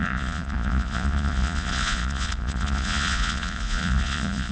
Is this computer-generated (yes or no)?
yes